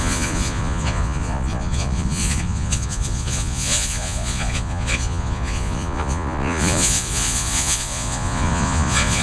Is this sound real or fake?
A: fake